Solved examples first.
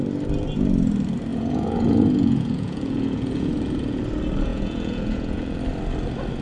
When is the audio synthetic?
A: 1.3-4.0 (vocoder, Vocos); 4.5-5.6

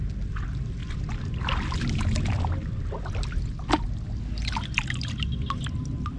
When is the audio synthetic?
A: none

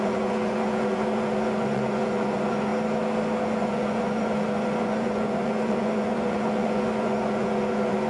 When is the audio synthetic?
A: 0.0-2.7 (vocoder, Vocos); 3.4-8.1